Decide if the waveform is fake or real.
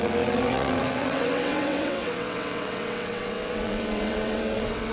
fake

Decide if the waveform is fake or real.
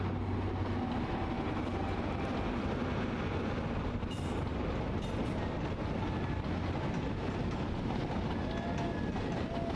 real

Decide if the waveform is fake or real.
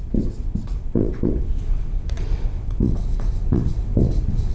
fake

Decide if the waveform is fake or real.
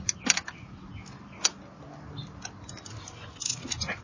real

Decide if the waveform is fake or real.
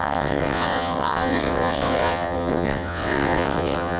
fake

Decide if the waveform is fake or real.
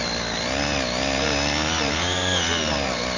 real